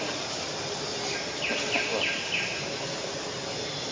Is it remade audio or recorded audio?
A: recorded